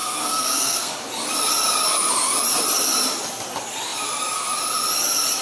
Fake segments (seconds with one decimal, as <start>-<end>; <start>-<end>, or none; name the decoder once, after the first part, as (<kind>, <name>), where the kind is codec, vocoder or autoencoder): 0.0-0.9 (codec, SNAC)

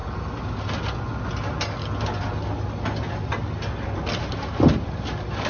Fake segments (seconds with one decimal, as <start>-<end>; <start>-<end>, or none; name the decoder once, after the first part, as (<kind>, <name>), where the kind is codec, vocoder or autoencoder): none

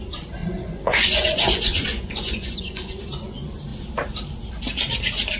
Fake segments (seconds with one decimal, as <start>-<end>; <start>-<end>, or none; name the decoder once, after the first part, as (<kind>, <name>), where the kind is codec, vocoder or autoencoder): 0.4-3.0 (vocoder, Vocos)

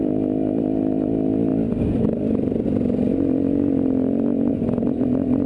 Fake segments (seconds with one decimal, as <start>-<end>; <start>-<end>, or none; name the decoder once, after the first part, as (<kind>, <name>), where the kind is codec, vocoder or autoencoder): none

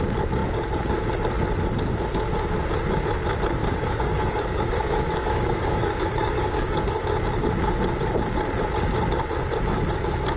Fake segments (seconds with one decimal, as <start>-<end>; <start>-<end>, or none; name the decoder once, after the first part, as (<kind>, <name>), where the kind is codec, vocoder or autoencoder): 3.6-6.8 (codec, DAC)

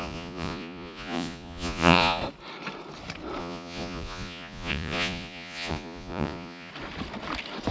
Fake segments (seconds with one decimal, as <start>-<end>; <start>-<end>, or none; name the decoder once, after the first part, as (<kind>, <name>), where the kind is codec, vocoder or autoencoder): 0.0-2.2 (vocoder, Vocos); 3.4-6.7